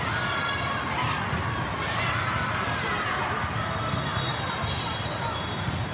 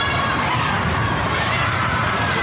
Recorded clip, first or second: first